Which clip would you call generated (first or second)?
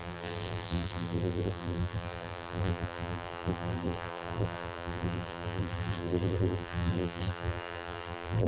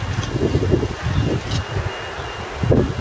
first